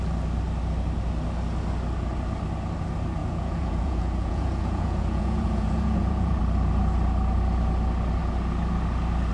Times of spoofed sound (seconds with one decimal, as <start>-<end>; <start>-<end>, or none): 3.2-6.4